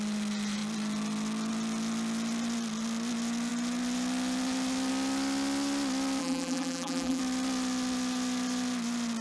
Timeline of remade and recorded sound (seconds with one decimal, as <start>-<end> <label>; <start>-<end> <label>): 0.0-6.2 recorded; 6.2-7.2 remade; 7.2-9.2 recorded